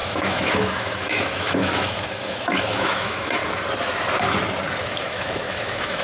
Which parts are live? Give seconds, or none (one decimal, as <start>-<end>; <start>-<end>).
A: 3.4-5.0